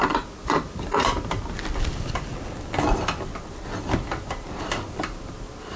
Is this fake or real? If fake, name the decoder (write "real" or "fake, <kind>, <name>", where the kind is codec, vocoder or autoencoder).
real